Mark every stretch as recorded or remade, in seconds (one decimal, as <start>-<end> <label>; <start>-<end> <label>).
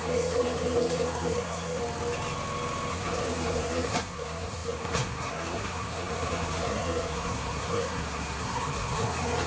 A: 0.0-1.8 remade; 1.8-2.9 recorded; 2.9-9.5 remade